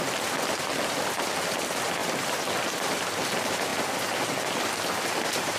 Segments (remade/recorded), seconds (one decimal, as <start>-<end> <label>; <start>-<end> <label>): 0.0-5.6 recorded